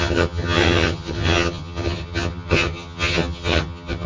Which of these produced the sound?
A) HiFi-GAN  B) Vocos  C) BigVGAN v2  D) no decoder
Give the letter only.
A